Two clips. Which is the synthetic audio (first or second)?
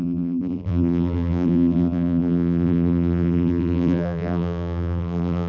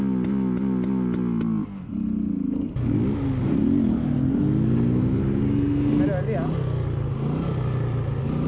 first